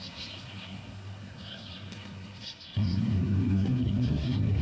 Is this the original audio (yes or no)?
no